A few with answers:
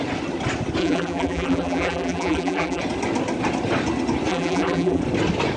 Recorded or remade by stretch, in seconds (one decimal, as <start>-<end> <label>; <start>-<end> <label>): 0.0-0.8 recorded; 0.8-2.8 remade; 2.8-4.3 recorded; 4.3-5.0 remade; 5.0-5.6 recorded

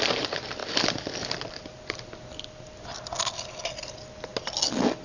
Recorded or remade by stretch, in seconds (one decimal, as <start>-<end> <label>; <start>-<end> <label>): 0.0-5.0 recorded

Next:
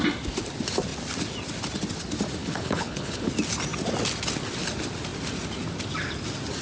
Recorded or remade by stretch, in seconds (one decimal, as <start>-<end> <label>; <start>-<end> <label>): 0.0-2.4 recorded; 2.4-3.3 remade; 3.3-6.6 recorded

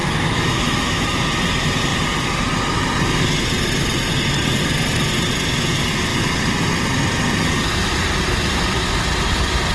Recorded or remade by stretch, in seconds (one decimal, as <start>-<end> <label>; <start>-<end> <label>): 0.0-1.2 remade; 1.2-9.7 recorded

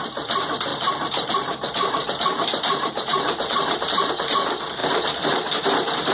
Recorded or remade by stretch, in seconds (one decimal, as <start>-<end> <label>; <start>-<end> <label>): 0.0-0.7 recorded; 0.7-4.1 remade; 4.1-6.1 recorded

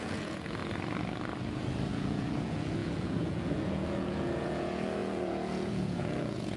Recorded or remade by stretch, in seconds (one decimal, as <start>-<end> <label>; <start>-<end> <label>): 0.0-0.6 remade; 0.6-1.9 recorded; 1.9-6.6 remade

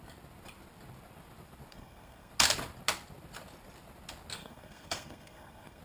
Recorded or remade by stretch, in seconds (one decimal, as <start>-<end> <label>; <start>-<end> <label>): 0.0-1.7 recorded; 1.7-2.3 remade; 2.3-4.4 recorded; 4.4-5.8 remade